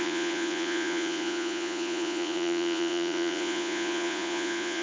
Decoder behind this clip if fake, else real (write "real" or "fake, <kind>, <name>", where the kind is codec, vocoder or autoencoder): fake, vocoder, Vocos